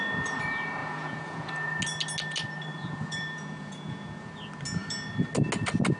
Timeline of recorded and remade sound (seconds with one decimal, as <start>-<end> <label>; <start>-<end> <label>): 0.0-0.8 recorded; 0.8-1.5 remade; 1.5-2.7 recorded; 2.7-4.3 remade; 4.3-6.0 recorded